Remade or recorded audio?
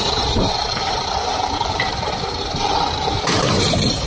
remade